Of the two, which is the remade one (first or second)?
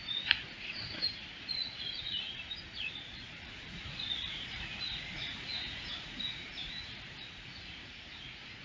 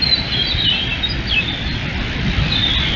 first